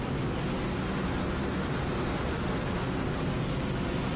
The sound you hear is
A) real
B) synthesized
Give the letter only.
A